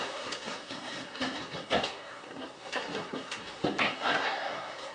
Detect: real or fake fake